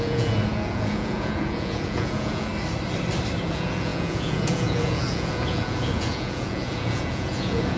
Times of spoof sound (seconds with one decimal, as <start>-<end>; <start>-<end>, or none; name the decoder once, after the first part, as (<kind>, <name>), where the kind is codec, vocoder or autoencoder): 0.0-2.5 (vocoder, Vocos); 3.4-7.8